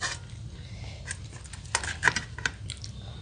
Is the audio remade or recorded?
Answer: recorded